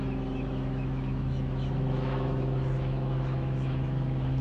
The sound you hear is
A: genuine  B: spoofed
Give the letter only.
B